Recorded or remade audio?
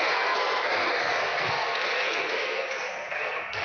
remade